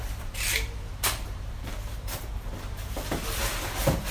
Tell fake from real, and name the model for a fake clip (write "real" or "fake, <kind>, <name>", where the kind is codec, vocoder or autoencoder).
fake, vocoder, BigVGAN v2